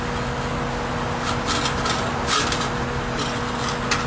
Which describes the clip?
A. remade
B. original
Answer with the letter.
B